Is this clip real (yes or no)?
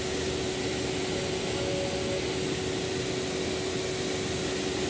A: yes